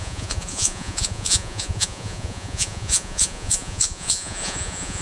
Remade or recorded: remade